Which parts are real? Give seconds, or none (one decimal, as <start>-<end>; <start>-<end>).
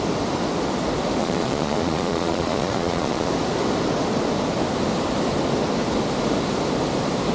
0.0-1.2; 3.3-7.3